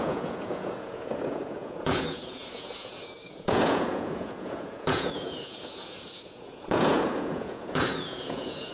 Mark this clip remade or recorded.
remade